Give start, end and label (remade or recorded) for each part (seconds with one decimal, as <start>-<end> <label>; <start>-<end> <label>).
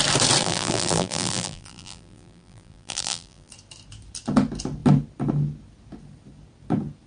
0.0-0.4 recorded; 0.4-3.5 remade; 3.5-7.1 recorded